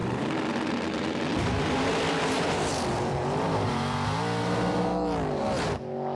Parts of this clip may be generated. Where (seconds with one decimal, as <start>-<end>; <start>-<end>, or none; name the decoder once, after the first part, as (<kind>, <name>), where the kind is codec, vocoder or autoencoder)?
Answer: 0.0-3.7 (vocoder, BigVGAN v2)